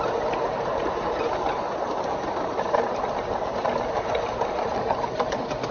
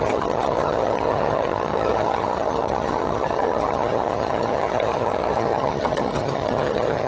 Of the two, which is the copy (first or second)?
second